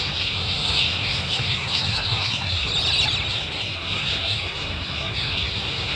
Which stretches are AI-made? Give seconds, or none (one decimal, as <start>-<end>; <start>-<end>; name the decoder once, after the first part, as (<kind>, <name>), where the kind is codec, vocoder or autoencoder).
0.0-2.7 (codec, SNAC); 3.3-6.0